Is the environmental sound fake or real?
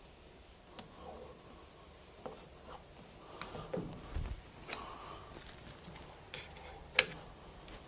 real